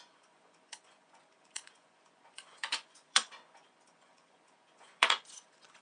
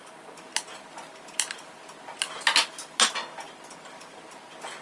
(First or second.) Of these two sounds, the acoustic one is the second